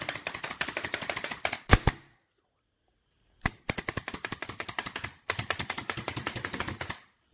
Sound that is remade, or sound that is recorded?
recorded